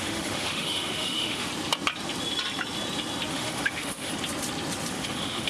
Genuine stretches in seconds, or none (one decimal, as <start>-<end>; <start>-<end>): 1.5-3.3; 4.1-4.9